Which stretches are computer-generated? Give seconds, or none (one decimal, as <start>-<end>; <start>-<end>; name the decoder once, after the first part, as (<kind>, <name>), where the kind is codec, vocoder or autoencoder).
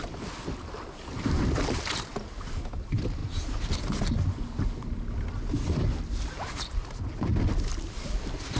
none